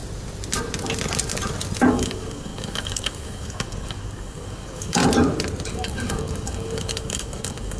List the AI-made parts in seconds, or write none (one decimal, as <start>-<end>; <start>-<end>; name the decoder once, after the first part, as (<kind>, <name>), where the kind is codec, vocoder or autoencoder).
1.9-5.0 (codec, DAC); 5.7-7.8

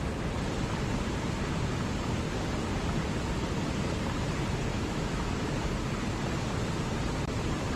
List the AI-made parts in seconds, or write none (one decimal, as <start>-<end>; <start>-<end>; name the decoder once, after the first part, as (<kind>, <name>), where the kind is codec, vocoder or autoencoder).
4.7-5.3 (autoencoder, DAC-VAE)

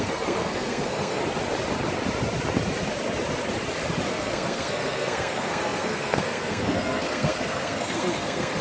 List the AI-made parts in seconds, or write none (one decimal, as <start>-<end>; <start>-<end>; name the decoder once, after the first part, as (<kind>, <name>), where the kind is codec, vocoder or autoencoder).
0.0-1.2 (codec, SNAC); 4.1-8.6

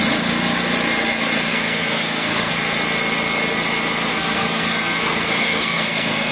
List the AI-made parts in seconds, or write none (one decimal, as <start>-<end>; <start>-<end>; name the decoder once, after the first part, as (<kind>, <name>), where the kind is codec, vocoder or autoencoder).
1.5-2.5 (codec, SNAC); 4.1-6.3